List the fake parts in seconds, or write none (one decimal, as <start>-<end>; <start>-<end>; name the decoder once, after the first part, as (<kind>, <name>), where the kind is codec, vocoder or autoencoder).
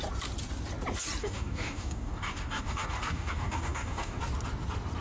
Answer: 1.2-4.2 (codec, DAC)